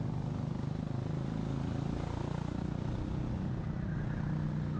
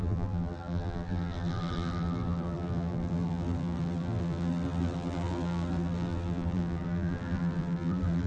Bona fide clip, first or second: first